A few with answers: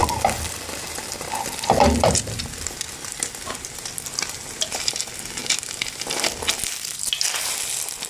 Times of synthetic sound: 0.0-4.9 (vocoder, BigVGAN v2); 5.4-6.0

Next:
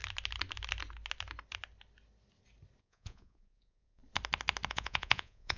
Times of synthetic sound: 2.8-4.0 (vocoder, Vocos); 4.7-5.6

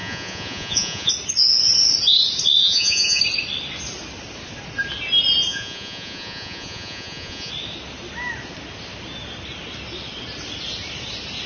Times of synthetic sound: 0.0-1.1 (vocoder, Vocos); 2.6-3.2; 5.5-7.5

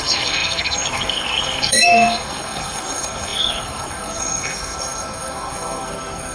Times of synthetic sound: 0.0-6.3 (codec, SNAC)

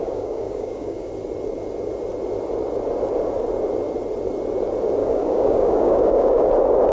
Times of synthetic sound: 0.0-1.1 (codec, DAC); 5.0-6.5

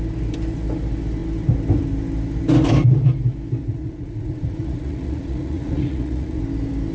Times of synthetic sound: 3.6-6.4 (vocoder, Vocos)